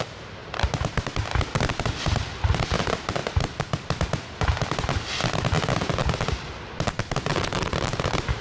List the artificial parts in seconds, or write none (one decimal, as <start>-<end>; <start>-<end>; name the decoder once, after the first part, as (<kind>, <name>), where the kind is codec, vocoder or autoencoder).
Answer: 0.4-0.9 (vocoder, BigVGAN v2); 7.3-8.4